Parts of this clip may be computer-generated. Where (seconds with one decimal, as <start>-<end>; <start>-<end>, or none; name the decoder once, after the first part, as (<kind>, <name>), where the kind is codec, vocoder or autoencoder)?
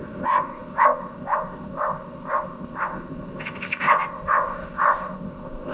0.0-5.7 (codec, ZipCodec)